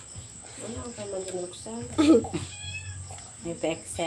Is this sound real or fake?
fake